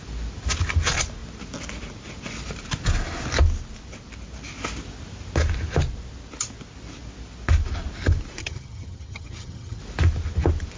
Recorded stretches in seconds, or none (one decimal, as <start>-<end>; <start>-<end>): 0.0-8.4; 9.8-10.8